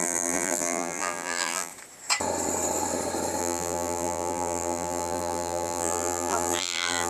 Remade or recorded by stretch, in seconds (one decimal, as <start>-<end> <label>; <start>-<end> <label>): 0.0-1.7 remade; 1.7-3.4 recorded; 3.4-7.1 remade